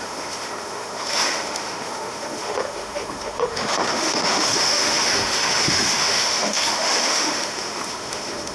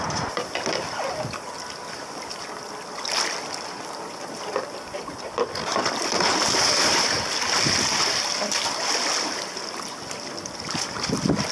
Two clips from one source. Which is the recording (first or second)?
second